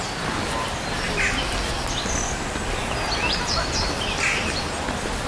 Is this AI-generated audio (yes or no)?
no